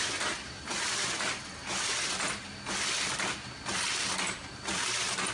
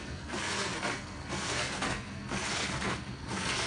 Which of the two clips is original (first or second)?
first